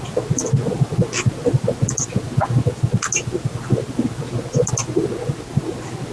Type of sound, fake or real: real